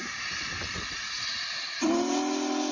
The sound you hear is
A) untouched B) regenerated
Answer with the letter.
A